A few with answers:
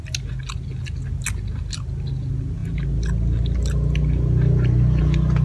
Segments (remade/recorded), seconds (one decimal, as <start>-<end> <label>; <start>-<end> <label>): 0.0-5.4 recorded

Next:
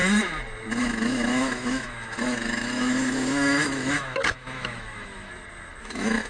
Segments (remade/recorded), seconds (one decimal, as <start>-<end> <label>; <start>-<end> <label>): 0.0-0.8 recorded; 0.8-5.3 remade; 5.3-5.8 recorded; 5.8-6.3 remade

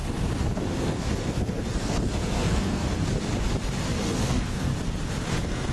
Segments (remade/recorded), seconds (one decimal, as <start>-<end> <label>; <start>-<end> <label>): 0.0-0.8 recorded; 0.8-2.9 remade; 2.9-4.0 recorded; 4.0-4.7 remade; 4.7-5.3 recorded; 5.3-5.7 remade

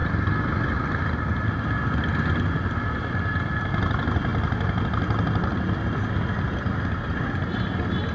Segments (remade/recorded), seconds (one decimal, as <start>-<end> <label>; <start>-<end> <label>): 0.0-8.1 recorded

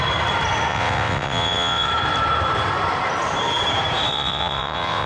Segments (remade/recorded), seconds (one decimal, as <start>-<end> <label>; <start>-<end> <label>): 0.0-0.7 recorded; 0.7-1.9 remade; 1.9-4.1 recorded; 4.1-5.1 remade

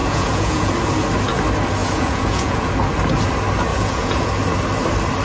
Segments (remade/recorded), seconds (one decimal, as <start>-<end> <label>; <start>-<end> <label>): 0.0-0.7 remade; 0.7-1.8 recorded; 1.8-2.7 remade; 2.7-3.7 recorded; 3.7-4.3 remade; 4.3-5.2 recorded